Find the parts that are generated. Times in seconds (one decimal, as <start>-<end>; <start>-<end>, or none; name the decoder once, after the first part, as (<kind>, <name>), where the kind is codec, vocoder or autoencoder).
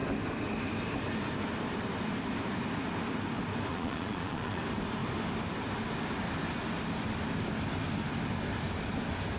3.7-4.6 (vocoder, Vocos)